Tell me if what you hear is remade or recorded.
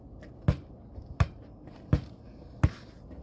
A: recorded